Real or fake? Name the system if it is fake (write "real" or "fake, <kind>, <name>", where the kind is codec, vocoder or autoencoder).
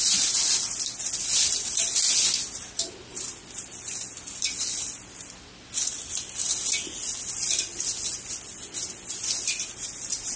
real